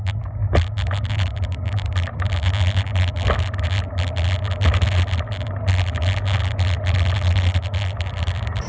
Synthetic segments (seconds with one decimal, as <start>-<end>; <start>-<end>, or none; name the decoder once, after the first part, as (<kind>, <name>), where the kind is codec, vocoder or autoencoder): none